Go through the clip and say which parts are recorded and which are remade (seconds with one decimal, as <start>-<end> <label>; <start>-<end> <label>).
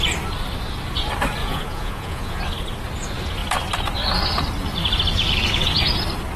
0.0-1.4 recorded; 1.4-2.4 remade; 2.4-6.4 recorded